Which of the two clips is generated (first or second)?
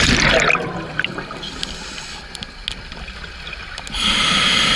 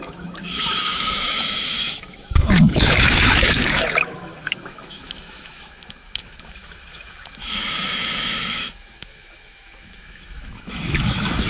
second